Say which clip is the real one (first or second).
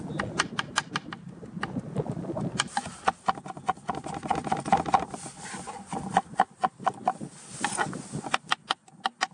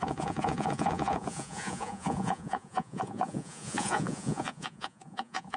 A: first